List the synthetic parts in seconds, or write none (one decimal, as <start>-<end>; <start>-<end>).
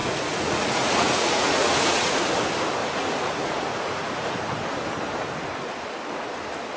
0.0-2.3; 2.8-4.3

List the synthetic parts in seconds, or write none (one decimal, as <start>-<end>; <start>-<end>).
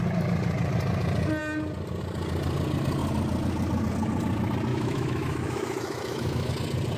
4.7-6.5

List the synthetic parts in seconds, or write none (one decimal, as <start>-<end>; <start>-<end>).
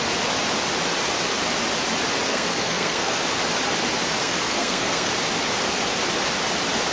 2.3-3.2; 4.2-5.1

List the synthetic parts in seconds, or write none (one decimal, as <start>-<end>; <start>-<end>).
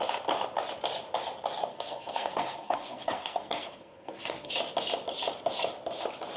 1.7-4.5